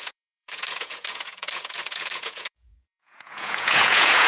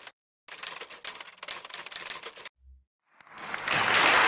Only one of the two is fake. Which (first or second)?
first